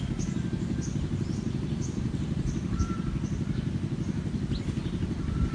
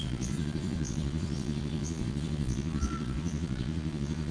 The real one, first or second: first